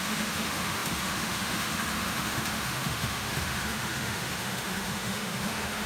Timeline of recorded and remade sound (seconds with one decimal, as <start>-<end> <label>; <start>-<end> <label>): 0.0-5.9 remade